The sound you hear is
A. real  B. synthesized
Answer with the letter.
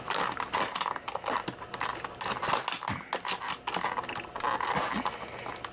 A